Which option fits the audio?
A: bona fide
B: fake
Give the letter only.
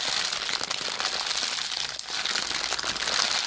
A